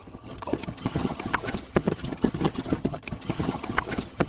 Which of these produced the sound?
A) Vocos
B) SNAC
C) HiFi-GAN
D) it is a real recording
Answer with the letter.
C